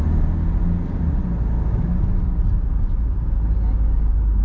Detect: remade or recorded recorded